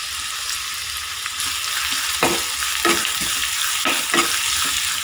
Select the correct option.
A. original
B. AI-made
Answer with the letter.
A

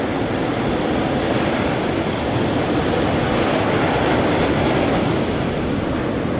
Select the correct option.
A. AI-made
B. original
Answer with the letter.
B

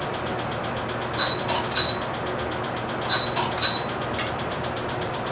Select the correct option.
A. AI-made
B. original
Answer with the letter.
B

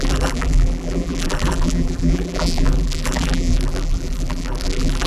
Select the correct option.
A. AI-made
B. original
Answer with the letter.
A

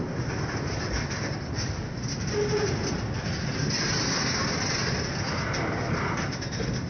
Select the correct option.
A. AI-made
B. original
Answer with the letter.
B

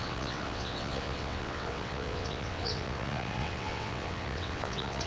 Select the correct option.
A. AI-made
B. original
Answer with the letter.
A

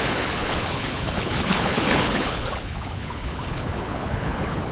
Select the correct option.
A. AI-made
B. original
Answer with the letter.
A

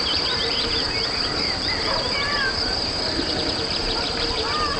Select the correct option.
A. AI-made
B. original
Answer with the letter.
A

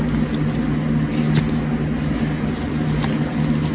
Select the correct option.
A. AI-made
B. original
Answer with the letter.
B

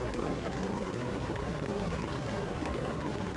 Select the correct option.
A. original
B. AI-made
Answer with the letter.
B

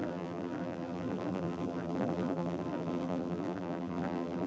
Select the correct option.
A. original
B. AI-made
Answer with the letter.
B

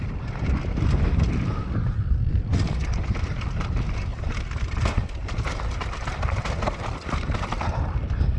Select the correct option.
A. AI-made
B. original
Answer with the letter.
B